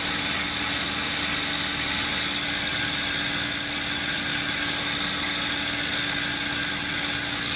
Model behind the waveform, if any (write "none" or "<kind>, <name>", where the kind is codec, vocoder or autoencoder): none